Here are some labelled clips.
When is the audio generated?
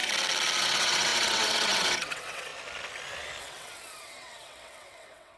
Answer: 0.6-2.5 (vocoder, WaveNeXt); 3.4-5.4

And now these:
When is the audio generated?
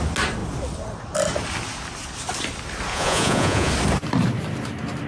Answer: 2.9-3.7 (vocoder, Vocos)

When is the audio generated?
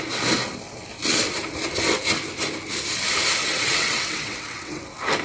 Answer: 3.4-4.8 (vocoder, WaveNeXt)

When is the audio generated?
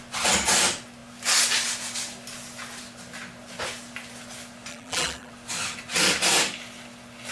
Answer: 4.7-5.3 (vocoder, BigVGAN v2)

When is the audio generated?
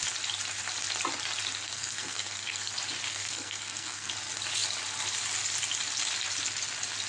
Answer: 1.6-2.7 (codec, SNAC); 3.1-4.1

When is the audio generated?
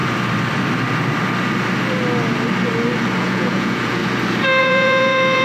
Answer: 3.2-4.0 (vocoder, Vocos); 4.6-5.4